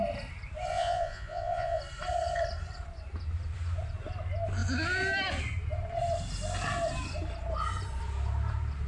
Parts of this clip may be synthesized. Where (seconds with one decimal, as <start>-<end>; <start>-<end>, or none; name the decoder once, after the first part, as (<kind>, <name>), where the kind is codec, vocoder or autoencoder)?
0.7-1.8 (vocoder, Vocos)